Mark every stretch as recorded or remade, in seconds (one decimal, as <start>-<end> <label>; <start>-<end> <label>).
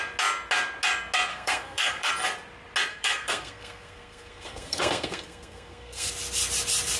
0.0-1.3 recorded; 1.3-2.1 remade; 2.1-2.9 recorded; 2.9-6.1 remade; 6.1-7.0 recorded